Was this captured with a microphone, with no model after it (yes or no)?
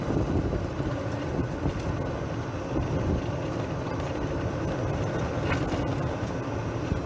yes